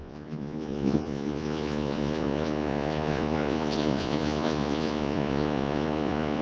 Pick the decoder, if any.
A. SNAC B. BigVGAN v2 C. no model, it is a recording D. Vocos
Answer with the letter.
D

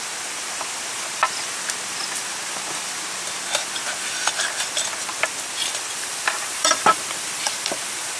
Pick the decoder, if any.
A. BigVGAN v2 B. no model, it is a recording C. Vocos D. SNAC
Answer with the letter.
A